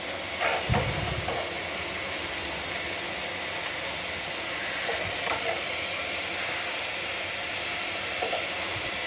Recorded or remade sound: recorded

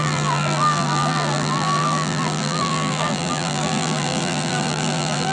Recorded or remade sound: remade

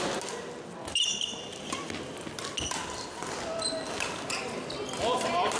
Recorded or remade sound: recorded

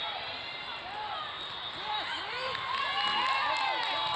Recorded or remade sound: recorded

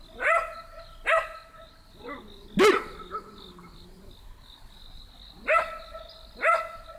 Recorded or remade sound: recorded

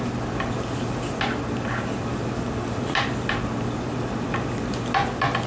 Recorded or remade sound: recorded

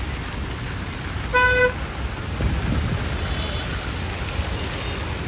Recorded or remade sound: recorded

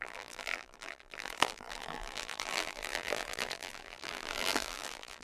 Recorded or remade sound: remade